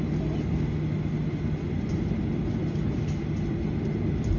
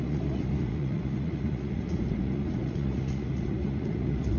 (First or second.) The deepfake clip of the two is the second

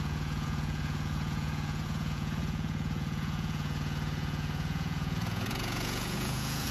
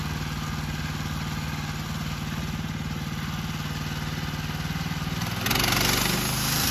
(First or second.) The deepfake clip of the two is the first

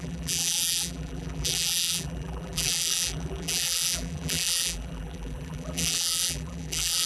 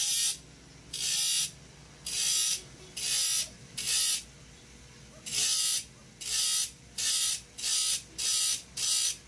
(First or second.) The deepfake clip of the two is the first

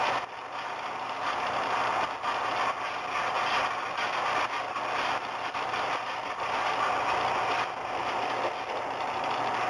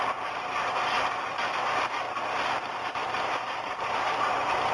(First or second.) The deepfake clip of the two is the second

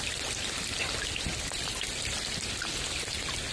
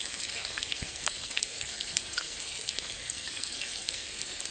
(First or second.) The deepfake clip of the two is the second